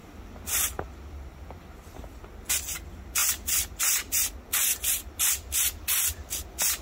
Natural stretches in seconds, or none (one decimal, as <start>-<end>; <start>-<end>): 0.0-6.8